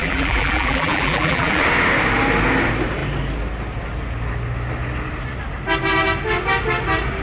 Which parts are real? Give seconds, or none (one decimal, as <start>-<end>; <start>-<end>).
1.6-7.2